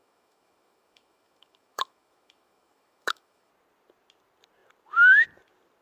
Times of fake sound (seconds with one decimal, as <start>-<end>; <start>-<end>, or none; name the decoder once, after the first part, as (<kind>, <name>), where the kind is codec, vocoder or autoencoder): 0.0-3.5 (autoencoder, DAC-VAE)